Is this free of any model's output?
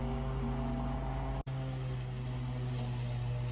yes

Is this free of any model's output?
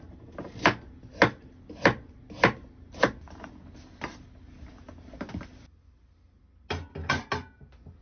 yes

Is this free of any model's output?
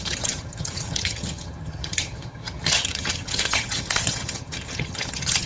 no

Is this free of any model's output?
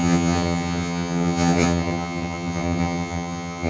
no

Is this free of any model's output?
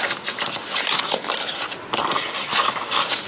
yes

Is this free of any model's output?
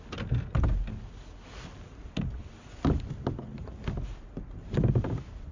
yes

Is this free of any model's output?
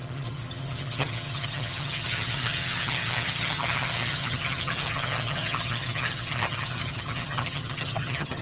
no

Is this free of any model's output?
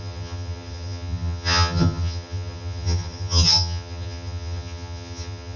no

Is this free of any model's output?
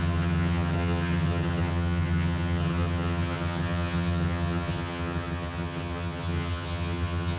no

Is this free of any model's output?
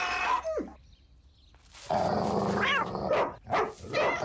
yes